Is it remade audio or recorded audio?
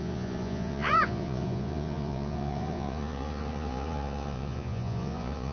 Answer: remade